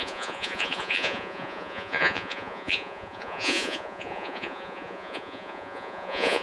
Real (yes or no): no